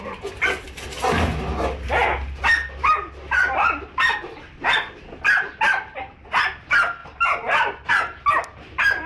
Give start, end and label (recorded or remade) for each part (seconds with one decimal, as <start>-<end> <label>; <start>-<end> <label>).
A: 0.0-9.1 recorded